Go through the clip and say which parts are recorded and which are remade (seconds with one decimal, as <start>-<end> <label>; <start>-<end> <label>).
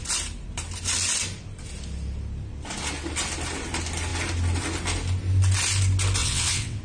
0.0-6.2 recorded; 6.2-6.8 remade